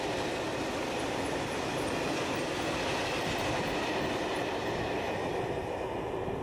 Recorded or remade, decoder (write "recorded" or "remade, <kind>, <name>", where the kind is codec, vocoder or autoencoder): recorded